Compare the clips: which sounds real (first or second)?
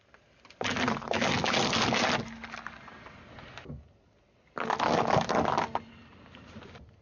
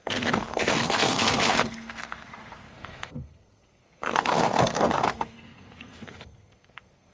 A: first